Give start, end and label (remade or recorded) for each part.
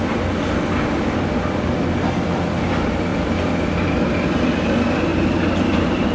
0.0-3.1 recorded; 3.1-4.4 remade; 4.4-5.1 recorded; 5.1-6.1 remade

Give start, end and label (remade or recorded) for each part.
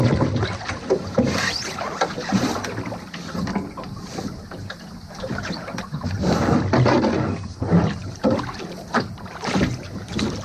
0.0-8.0 recorded; 8.0-9.6 remade; 9.6-10.4 recorded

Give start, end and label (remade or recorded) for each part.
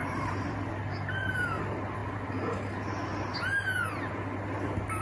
0.0-0.7 remade; 0.7-5.0 recorded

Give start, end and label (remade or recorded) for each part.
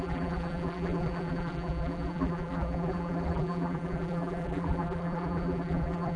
0.0-6.2 remade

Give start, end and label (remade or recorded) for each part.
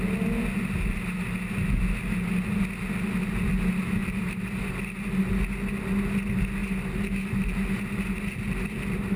0.0-4.0 recorded; 4.0-4.6 remade; 4.6-6.6 recorded; 6.6-7.8 remade; 7.8-9.2 recorded